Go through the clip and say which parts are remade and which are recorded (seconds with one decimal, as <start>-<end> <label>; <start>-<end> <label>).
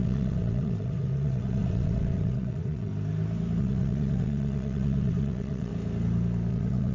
0.0-2.9 remade; 2.9-3.6 recorded; 3.6-5.7 remade; 5.7-6.5 recorded; 6.5-6.9 remade